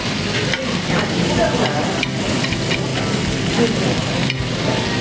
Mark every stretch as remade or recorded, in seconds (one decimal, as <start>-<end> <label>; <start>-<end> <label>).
0.0-0.4 recorded; 0.4-1.9 remade; 1.9-5.0 recorded